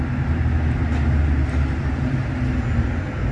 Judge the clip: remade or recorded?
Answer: recorded